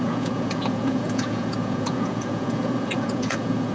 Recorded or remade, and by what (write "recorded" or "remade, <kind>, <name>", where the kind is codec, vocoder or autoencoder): remade, vocoder, Vocos